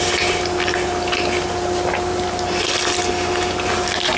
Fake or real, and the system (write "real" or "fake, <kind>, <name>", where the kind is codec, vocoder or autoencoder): real